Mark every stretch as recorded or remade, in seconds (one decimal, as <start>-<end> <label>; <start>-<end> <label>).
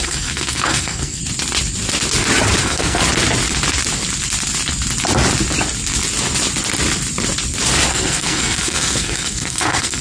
0.0-1.2 remade; 1.2-2.6 recorded; 2.6-3.0 remade; 3.0-7.9 recorded; 7.9-10.0 remade